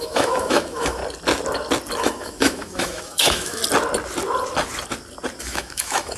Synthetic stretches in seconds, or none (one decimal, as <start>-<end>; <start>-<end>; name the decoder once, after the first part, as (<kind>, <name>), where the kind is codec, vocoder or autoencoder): 0.0-1.0 (autoencoder, DAC-VAE); 2.0-3.6; 5.4-6.2